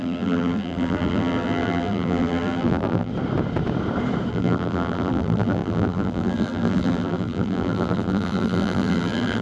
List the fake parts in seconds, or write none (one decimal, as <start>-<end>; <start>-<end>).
0.0-3.1; 4.3-9.4